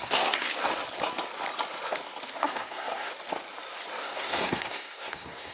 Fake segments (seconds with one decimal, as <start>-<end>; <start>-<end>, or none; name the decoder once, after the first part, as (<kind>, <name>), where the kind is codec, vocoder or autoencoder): 0.0-0.5 (codec, SNAC); 2.4-3.1; 4.0-5.5